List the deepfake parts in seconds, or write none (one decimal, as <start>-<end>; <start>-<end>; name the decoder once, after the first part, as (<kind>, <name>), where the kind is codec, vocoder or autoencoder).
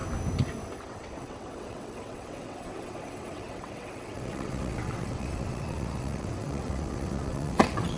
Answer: 0.8-8.0 (vocoder, WaveNeXt)